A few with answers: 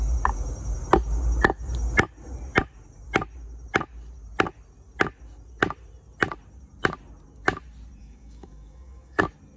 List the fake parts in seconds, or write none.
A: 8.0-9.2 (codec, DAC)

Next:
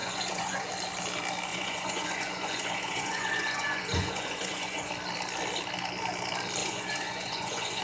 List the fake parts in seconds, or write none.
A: 0.0-0.7 (vocoder, Vocos); 1.5-4.9; 6.6-7.8